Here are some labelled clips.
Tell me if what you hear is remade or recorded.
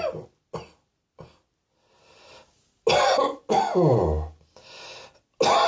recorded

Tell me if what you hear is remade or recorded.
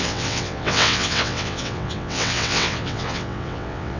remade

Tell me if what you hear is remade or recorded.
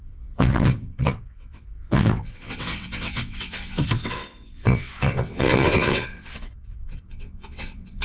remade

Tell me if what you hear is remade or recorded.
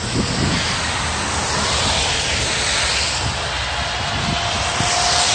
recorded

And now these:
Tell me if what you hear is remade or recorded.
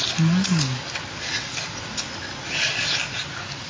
recorded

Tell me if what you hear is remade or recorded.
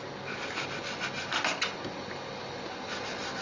recorded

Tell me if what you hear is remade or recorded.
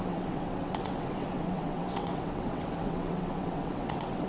remade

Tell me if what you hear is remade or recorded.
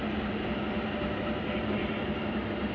recorded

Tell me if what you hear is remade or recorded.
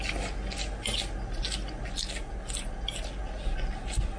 recorded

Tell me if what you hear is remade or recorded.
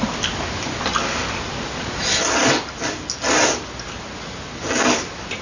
recorded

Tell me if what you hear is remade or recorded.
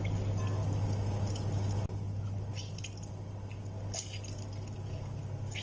recorded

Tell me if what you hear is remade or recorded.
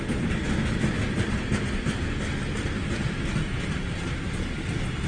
recorded